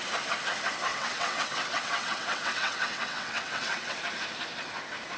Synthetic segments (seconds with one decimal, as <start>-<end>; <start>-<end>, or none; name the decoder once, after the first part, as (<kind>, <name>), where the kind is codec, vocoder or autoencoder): 0.9-4.0 (vocoder, WaveNeXt)